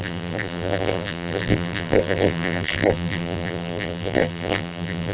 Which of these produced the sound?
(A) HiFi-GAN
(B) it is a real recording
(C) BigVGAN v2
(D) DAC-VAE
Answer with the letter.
C